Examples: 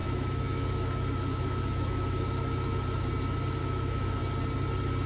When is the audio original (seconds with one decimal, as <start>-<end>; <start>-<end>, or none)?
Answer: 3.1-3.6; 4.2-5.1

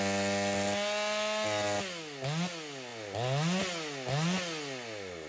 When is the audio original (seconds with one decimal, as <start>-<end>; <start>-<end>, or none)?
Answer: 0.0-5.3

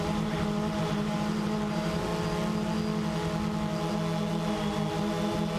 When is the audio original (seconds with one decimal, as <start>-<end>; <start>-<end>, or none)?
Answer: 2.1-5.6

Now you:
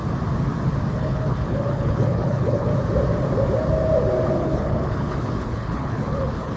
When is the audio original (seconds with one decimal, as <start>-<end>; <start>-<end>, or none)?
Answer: 0.0-0.9; 2.7-4.4

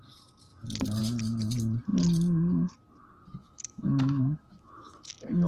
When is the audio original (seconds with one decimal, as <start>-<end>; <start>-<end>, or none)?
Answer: 0.0-3.4